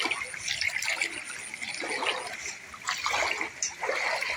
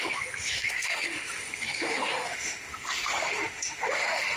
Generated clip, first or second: second